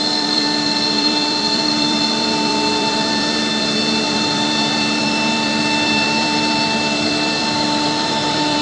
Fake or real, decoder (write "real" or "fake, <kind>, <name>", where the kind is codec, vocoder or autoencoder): fake, vocoder, BigVGAN v2